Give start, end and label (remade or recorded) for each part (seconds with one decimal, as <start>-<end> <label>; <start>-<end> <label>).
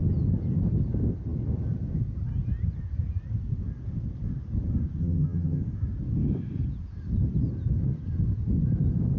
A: 0.0-5.0 recorded; 5.0-5.6 remade; 5.6-9.2 recorded